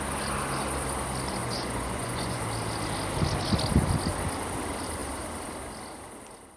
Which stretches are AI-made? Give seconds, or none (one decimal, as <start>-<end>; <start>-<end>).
1.4-2.4

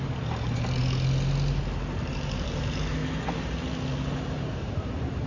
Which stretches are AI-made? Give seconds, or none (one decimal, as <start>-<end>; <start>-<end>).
0.0-0.8; 2.1-3.0; 4.3-5.3

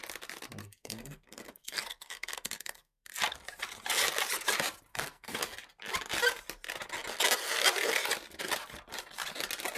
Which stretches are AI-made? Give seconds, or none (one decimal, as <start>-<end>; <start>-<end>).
0.6-3.1; 4.9-5.4

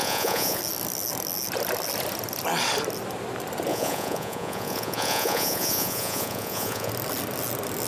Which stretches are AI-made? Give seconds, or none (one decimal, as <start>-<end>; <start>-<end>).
0.0-0.6; 3.7-6.9

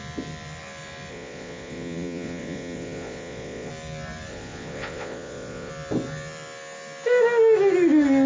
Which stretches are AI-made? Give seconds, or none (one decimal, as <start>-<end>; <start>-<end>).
1.1-3.7; 4.3-5.7

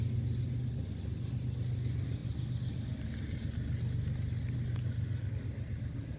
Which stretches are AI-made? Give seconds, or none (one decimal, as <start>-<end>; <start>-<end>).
none

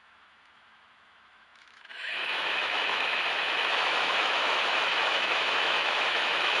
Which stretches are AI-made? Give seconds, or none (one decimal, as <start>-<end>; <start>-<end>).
0.0-6.6

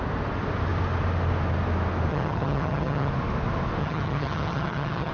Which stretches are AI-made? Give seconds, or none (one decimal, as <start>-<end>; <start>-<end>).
2.1-3.1; 3.8-5.1